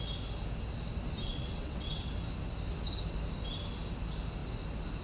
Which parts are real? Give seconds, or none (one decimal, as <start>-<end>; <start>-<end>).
0.0-1.2; 2.1-5.0